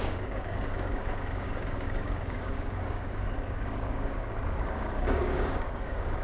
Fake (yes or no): yes